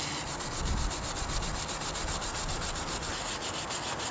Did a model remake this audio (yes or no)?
no